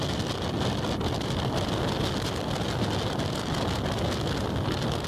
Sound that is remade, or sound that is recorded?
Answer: recorded